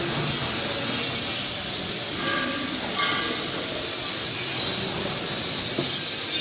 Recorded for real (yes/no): yes